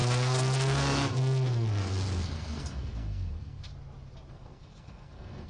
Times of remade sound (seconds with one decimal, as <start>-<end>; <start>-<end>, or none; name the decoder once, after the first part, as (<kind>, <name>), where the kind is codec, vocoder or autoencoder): 0.0-3.7 (codec, SNAC); 4.3-5.5